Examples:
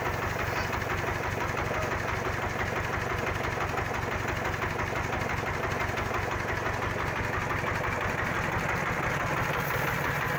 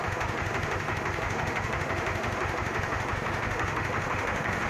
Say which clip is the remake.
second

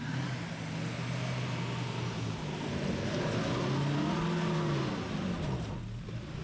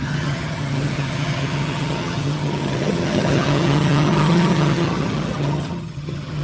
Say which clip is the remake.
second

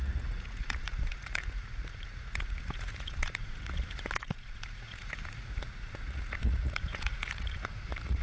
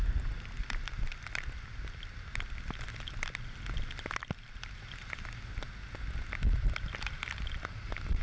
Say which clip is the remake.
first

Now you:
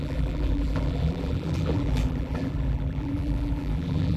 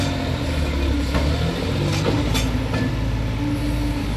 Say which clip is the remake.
first